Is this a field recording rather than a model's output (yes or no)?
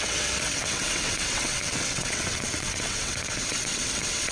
no